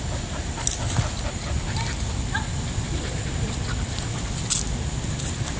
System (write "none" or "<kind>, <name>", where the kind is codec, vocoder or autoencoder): none